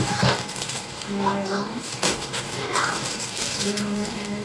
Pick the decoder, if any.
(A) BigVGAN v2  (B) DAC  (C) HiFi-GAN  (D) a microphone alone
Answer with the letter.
B